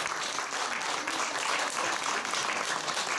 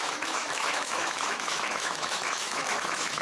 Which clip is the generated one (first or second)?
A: second